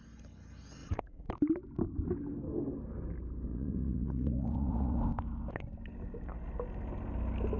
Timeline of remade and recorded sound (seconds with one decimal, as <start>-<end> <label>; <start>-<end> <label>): 0.0-0.8 recorded; 0.8-1.3 remade; 1.3-3.5 recorded; 3.5-5.0 remade; 5.0-7.6 recorded

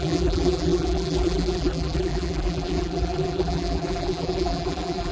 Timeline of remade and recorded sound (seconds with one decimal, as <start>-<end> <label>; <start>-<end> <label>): 0.0-5.1 remade

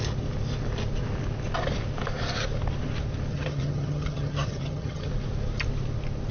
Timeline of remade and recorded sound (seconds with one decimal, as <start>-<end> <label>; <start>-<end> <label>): 0.0-3.3 recorded; 3.3-5.1 remade; 5.1-6.3 recorded

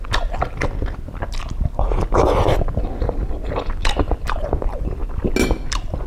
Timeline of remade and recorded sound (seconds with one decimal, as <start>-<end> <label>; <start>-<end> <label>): 0.0-6.1 recorded

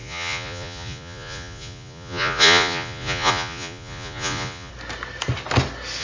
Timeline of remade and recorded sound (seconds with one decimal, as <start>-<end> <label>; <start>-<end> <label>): 0.0-4.7 remade; 4.7-6.0 recorded

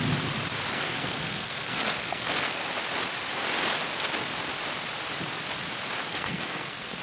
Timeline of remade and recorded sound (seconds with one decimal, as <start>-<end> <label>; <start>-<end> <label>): 0.0-0.7 recorded; 0.7-2.6 remade; 2.6-6.1 recorded; 6.1-7.0 remade

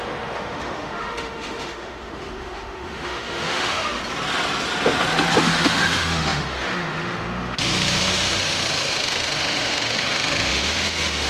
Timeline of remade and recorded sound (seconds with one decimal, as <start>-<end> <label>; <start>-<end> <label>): 0.0-4.0 remade; 4.0-5.4 recorded; 5.4-11.3 remade

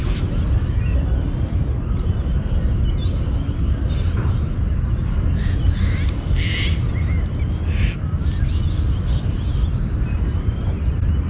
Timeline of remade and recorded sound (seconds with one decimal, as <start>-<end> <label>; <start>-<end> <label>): 0.0-11.3 recorded